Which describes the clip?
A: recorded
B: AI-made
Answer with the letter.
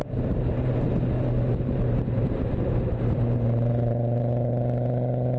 B